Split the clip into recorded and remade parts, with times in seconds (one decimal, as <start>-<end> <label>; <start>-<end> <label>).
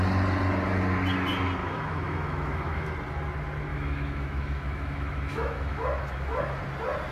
0.0-1.6 recorded; 1.6-2.9 remade; 2.9-3.7 recorded; 3.7-6.6 remade; 6.6-7.1 recorded